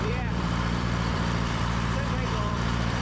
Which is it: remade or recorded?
remade